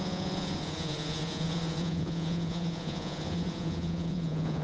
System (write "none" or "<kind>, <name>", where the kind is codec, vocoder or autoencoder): vocoder, Vocos